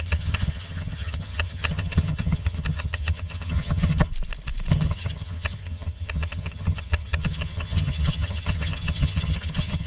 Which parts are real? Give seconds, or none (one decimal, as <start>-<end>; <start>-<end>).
4.1-4.7